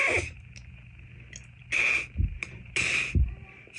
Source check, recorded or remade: recorded